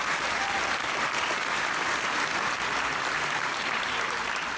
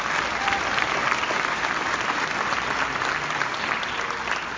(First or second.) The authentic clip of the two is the second